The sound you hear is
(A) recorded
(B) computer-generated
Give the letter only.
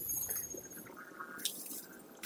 A